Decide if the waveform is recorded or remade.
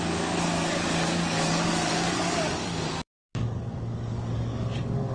remade